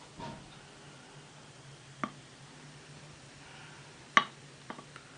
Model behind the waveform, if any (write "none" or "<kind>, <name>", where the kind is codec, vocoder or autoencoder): none